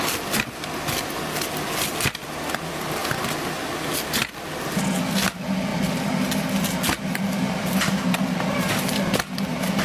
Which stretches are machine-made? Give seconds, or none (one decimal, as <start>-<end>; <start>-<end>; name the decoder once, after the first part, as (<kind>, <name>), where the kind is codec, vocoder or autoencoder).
none